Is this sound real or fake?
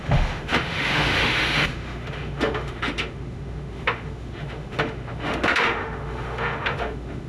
fake